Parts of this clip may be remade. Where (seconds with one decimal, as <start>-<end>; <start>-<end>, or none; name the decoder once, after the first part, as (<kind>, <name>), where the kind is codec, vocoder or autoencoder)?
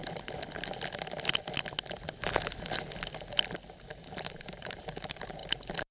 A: 3.5-5.9 (vocoder, BigVGAN v2)